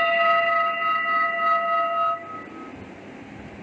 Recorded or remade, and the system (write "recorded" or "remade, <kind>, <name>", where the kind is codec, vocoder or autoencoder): recorded